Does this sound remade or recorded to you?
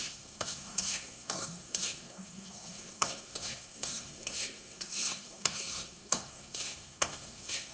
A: remade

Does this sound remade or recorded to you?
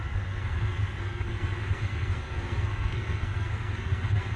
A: remade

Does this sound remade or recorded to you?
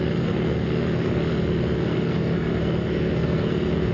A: remade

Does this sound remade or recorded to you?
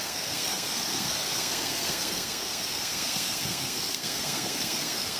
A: remade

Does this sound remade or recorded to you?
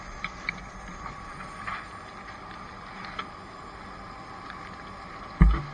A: recorded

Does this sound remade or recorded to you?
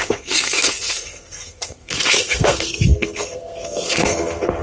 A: remade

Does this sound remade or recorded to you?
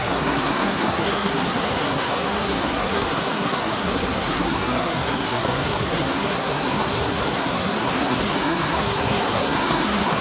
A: remade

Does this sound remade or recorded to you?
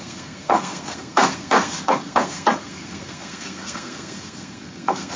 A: remade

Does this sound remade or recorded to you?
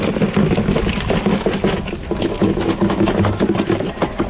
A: recorded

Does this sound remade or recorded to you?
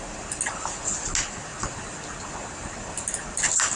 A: recorded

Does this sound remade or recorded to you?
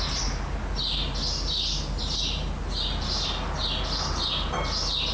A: recorded